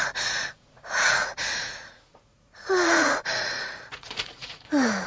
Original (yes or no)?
no